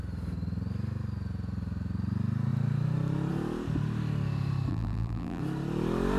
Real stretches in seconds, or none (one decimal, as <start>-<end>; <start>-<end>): 0.0-4.7; 5.4-6.2